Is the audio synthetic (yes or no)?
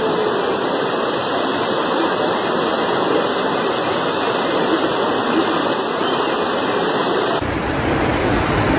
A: no